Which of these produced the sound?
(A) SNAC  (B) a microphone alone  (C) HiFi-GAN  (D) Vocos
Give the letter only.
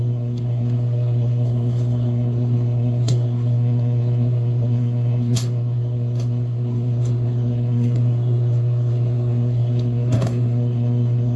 A